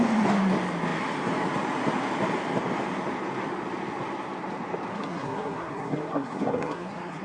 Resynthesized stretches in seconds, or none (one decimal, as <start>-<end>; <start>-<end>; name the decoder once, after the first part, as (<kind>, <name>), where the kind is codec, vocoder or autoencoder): 4.9-7.2 (codec, SNAC)